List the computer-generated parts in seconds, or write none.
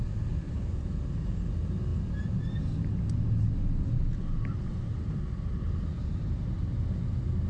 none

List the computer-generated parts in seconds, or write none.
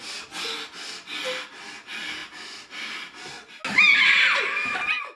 none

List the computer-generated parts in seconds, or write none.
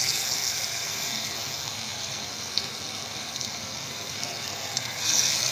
0.0-5.5 (codec, SNAC)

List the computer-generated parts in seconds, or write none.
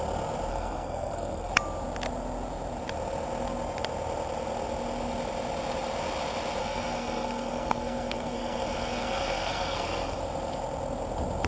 0.5-1.5 (codec, SNAC); 6.6-10.2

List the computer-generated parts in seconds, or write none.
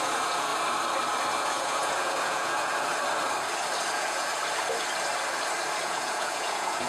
0.0-0.5 (vocoder, Vocos); 1.4-2.9; 3.9-4.3; 5.8-6.9